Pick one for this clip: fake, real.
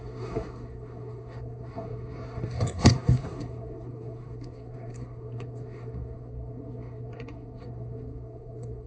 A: fake